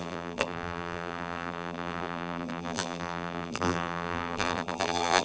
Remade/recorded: remade